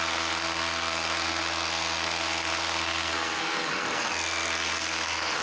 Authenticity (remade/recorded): remade